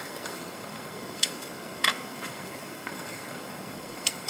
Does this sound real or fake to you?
fake